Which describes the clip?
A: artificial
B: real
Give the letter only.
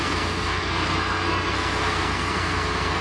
A